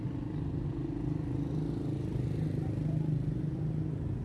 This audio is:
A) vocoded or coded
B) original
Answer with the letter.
B